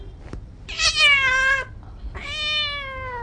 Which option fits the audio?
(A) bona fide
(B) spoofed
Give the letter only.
A